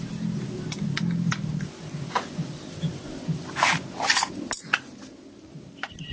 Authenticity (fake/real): real